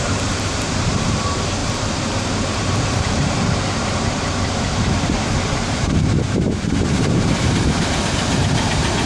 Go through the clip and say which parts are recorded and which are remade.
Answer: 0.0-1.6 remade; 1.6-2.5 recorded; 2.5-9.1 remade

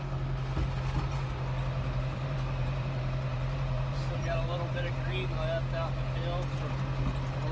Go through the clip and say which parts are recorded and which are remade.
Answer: 0.0-1.1 recorded; 1.1-4.9 remade; 4.9-7.5 recorded

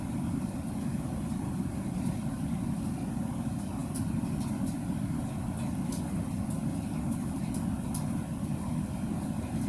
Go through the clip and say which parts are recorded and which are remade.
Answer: 0.0-3.8 recorded; 3.8-4.4 remade; 4.4-9.7 recorded

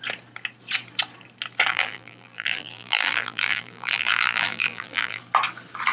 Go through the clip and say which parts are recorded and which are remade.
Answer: 0.0-1.7 recorded; 1.7-5.2 remade; 5.2-5.9 recorded

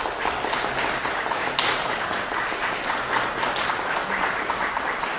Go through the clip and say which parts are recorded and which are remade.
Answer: 0.0-1.0 recorded; 1.0-2.6 remade; 2.6-5.2 recorded

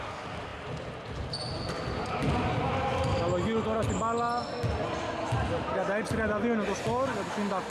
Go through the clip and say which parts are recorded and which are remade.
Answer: 0.0-7.7 recorded

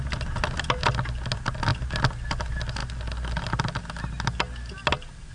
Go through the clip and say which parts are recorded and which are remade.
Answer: 0.0-5.3 recorded